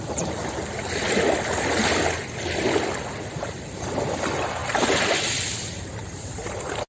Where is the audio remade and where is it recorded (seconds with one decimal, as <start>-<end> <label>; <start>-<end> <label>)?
0.0-6.9 recorded